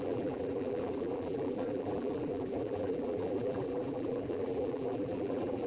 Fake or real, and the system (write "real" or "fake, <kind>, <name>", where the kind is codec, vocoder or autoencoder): fake, vocoder, BigVGAN v2